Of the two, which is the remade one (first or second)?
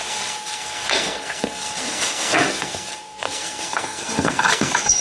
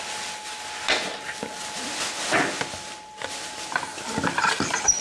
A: first